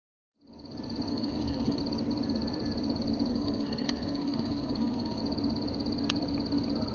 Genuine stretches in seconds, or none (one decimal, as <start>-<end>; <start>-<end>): 0.0-1.1; 1.8-3.3; 5.2-6.9